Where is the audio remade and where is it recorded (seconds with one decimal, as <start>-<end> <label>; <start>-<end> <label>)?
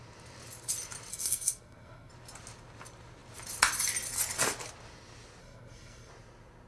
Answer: 0.0-1.1 recorded; 1.1-2.1 remade; 2.1-5.4 recorded; 5.4-6.1 remade; 6.1-6.7 recorded